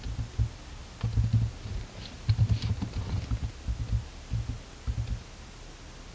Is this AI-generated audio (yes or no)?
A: no